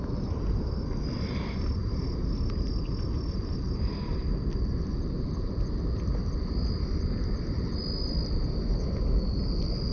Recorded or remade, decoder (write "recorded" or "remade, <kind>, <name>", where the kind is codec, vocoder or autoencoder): recorded